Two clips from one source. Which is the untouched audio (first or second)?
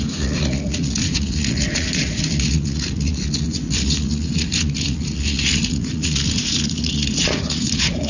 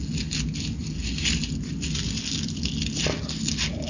second